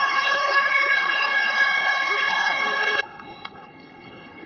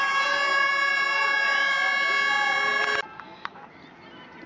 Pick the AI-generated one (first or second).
first